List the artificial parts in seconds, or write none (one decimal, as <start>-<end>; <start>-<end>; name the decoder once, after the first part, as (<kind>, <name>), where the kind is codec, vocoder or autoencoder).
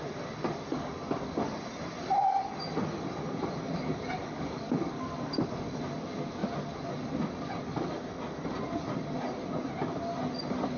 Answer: 4.2-5.5 (codec, DAC)